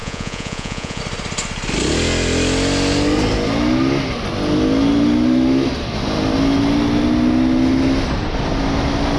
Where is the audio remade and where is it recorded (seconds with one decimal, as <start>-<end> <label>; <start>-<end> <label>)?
0.0-1.0 remade; 1.0-9.2 recorded